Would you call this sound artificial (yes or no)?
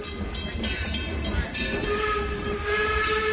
no